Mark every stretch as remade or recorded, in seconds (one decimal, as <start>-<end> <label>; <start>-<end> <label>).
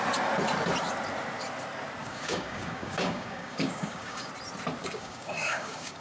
0.0-2.0 recorded; 2.0-4.3 remade; 4.3-4.8 recorded; 4.8-6.0 remade